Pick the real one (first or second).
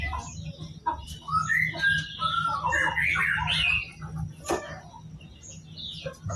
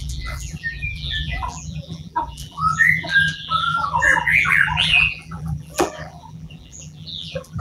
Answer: first